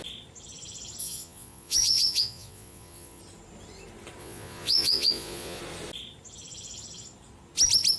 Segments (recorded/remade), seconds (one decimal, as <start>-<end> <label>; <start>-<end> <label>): 0.0-1.0 recorded; 1.0-3.2 remade; 3.2-4.2 recorded; 4.2-5.6 remade; 5.6-8.0 recorded

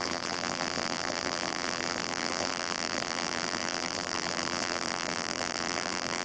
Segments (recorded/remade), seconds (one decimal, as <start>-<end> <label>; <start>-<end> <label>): 0.0-6.2 remade

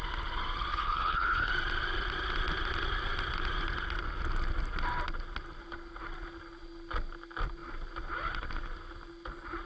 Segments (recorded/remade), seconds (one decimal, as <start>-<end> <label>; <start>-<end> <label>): 0.0-0.7 recorded; 0.7-1.5 remade; 1.5-9.7 recorded

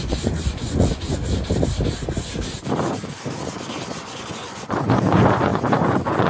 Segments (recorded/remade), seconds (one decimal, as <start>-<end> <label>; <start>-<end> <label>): 0.0-1.2 remade; 1.2-3.9 recorded; 3.9-6.3 remade